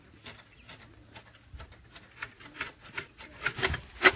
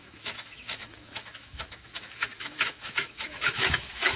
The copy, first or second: second